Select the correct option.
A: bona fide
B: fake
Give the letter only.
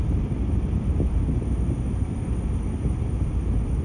A